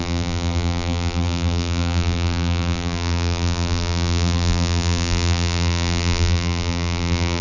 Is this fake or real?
fake